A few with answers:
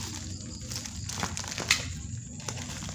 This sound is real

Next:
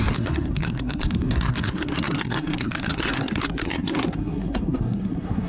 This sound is fake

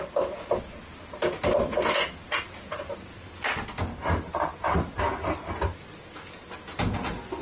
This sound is real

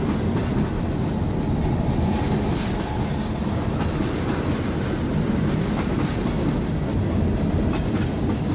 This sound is real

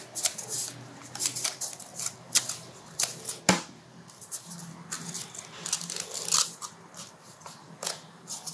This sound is real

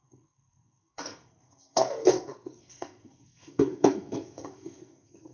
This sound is fake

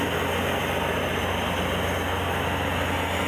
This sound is real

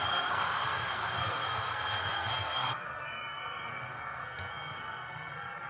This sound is fake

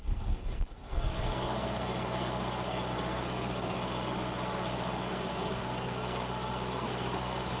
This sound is fake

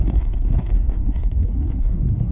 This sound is fake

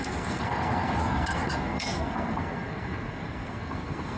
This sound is fake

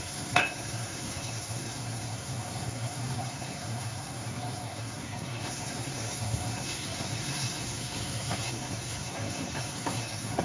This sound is fake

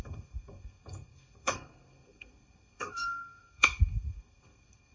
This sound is fake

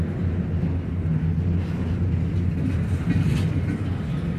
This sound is real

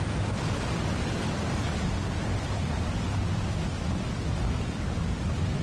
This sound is real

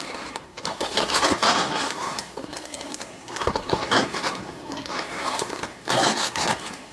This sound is fake